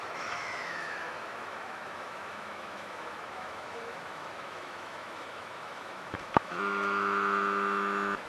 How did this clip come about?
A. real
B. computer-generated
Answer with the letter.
B